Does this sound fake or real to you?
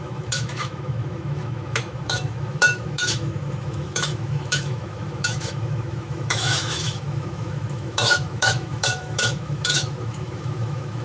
fake